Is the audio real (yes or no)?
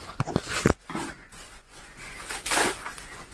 no